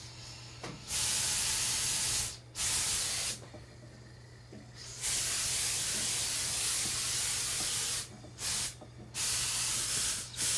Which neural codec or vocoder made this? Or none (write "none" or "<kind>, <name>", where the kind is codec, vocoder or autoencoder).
none